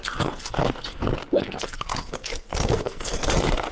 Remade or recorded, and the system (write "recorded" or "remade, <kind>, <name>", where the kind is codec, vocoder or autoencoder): remade, codec, SNAC